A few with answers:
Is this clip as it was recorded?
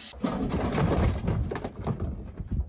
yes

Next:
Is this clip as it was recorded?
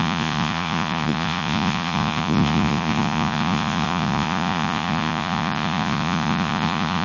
no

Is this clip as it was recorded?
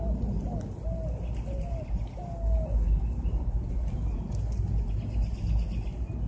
yes